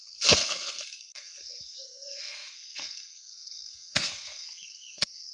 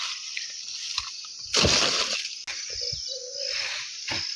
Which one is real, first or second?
second